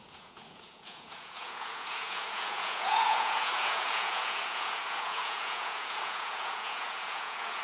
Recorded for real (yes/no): no